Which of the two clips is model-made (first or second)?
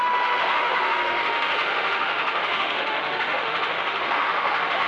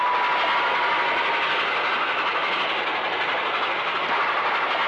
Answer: first